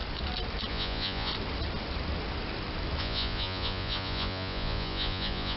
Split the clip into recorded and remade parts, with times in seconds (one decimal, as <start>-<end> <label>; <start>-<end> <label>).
0.0-0.7 recorded; 0.7-1.3 remade; 1.3-3.0 recorded; 3.0-5.6 remade